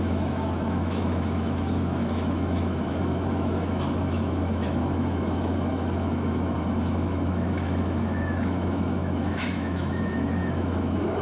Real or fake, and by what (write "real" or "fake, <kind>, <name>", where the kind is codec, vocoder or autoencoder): fake, autoencoder, DAC-VAE